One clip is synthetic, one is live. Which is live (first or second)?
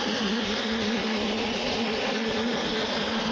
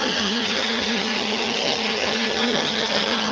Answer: first